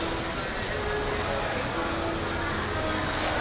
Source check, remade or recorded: recorded